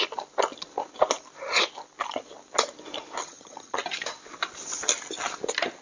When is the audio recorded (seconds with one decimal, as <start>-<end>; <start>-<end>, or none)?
0.0-3.2; 3.8-5.8